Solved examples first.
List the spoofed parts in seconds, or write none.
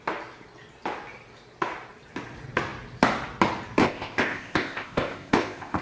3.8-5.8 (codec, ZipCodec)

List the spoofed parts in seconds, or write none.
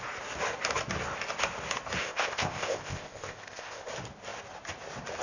2.0-3.9 (codec, ZipCodec)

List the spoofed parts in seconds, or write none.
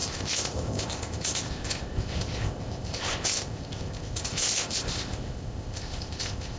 0.0-6.6 (codec, ZipCodec)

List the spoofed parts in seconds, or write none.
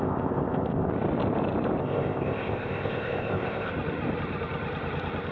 0.0-0.9 (codec, ZipCodec); 1.8-3.7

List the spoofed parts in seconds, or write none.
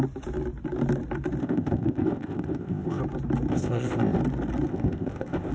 1.4-3.0 (codec, ZipCodec); 3.5-4.2; 4.7-5.5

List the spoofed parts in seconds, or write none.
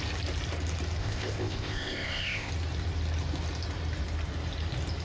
1.0-2.5 (codec, ZipCodec)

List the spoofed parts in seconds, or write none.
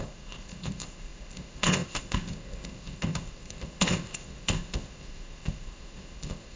0.0-6.6 (codec, ZipCodec)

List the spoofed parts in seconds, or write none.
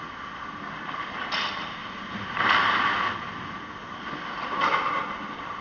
none